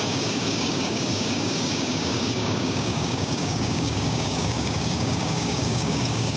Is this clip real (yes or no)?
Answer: no